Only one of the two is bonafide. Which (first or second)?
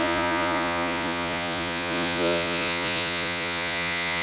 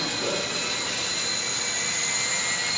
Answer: second